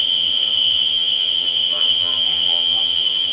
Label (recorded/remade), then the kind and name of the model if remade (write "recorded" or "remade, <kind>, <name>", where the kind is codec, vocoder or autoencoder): remade, vocoder, HiFi-GAN